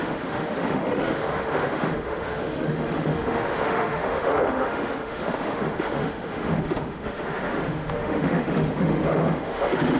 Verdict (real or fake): fake